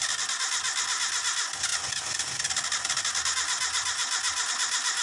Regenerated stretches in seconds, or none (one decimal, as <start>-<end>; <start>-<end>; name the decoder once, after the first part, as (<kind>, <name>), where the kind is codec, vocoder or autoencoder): none